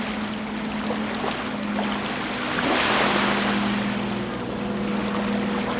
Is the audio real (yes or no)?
yes